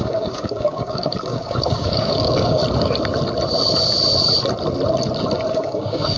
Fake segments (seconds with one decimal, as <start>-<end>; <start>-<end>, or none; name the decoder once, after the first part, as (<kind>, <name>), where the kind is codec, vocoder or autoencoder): 0.0-2.6 (codec, DAC); 5.5-6.2